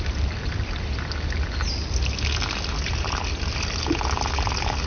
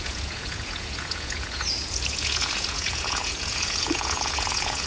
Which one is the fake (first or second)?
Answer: second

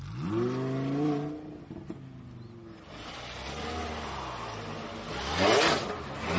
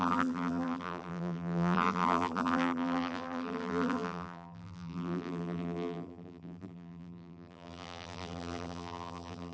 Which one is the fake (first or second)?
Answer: second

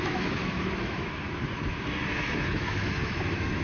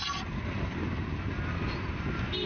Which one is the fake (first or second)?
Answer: first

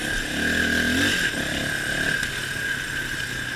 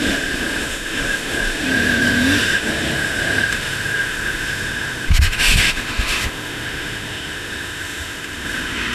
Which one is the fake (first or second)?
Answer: second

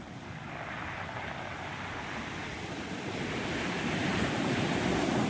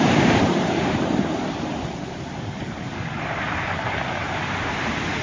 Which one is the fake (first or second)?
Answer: second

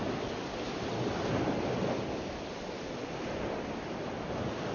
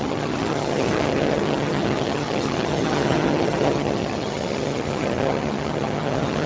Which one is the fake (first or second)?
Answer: second